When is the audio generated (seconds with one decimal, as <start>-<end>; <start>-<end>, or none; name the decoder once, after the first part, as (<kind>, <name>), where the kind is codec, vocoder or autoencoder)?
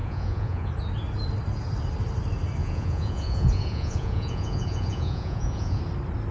0.0-0.7 (vocoder, Vocos); 2.6-5.8